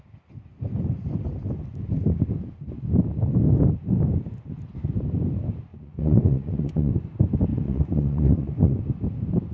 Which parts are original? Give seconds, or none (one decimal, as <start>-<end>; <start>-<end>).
0.0-5.7; 6.9-7.5; 8.8-9.5

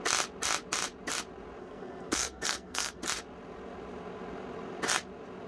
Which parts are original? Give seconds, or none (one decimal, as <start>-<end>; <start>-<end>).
0.0-1.6; 3.0-5.5

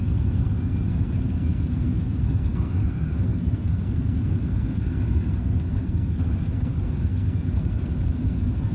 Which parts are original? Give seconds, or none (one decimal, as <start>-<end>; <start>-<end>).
none

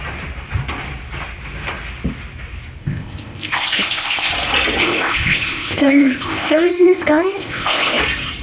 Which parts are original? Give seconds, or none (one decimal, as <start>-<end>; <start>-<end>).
0.0-2.8; 4.3-4.8; 8.0-8.4

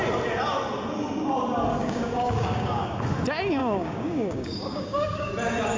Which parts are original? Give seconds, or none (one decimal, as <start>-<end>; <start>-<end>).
0.0-1.8; 3.0-3.6; 5.3-5.8